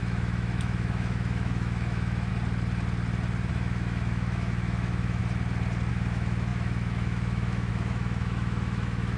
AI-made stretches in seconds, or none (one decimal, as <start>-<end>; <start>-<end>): 0.0-2.3; 3.5-5.2; 5.9-9.2